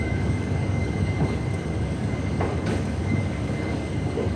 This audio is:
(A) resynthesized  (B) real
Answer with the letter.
A